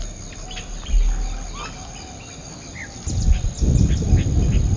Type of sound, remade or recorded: recorded